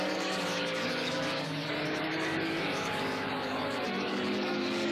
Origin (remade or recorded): remade